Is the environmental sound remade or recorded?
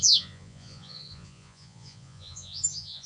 remade